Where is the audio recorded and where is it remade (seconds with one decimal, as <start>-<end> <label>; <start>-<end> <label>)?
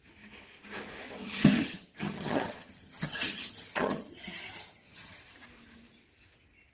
0.0-1.2 recorded; 1.2-5.2 remade; 5.2-6.7 recorded